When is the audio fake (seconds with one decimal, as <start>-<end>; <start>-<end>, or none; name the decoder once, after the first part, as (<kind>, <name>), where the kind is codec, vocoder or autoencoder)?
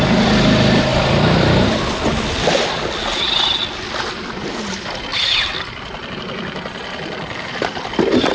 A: 0.9-2.9 (vocoder, BigVGAN v2); 5.1-6.2